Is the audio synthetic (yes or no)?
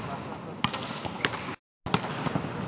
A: no